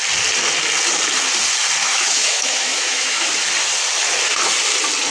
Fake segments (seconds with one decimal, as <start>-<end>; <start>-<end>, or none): 1.8-3.3